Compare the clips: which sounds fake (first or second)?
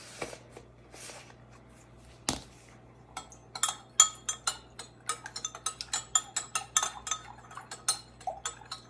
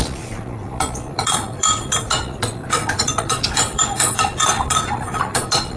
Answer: second